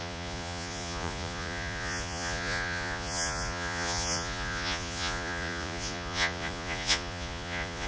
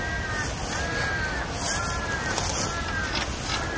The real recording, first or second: second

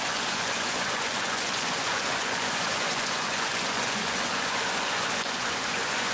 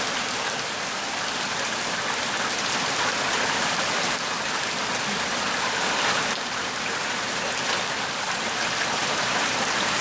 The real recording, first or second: second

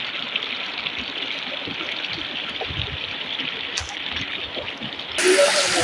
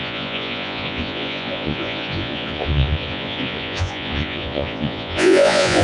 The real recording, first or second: first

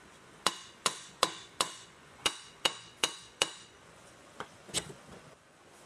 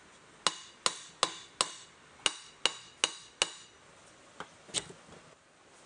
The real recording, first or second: second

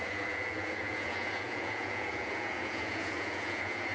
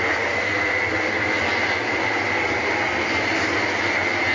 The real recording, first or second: second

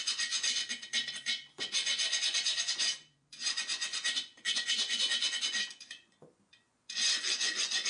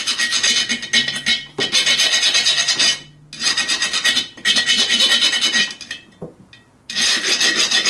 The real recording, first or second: second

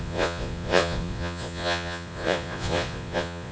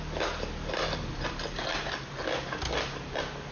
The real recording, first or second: second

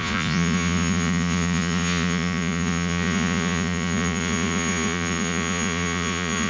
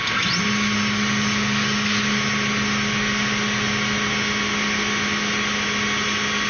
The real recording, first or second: second